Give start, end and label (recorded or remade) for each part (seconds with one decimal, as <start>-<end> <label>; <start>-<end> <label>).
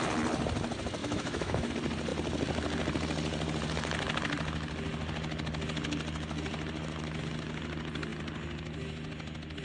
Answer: 0.0-1.0 recorded; 1.0-1.7 remade; 1.7-9.6 recorded